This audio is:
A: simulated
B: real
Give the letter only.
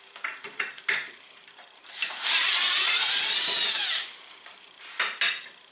A